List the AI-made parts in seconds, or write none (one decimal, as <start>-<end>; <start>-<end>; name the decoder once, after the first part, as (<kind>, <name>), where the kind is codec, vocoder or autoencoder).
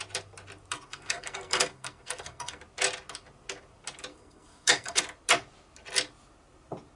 0.9-2.6 (codec, SNAC); 4.1-5.0